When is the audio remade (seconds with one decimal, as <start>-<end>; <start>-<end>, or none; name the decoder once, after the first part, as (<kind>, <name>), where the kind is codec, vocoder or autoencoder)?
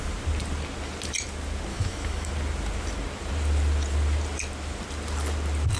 1.7-2.3 (autoencoder, DAC-VAE)